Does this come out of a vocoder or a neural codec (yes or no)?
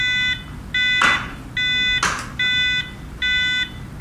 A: no